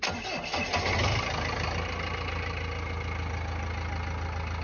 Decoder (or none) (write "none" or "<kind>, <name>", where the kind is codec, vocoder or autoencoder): none